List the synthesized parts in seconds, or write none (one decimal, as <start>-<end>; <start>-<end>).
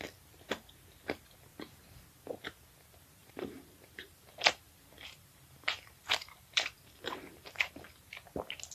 3.2-8.0